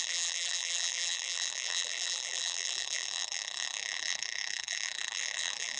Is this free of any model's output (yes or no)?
no